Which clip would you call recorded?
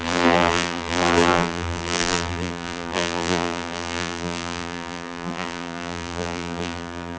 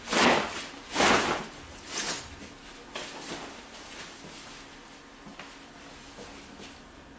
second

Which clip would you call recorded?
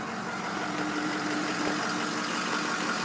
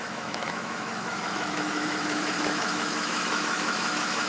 first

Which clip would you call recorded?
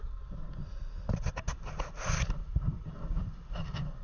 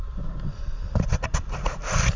first